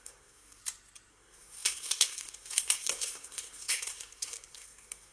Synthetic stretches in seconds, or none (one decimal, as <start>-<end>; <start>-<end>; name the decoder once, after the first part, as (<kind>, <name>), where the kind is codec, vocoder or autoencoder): 0.0-0.6 (codec, SNAC); 1.1-5.1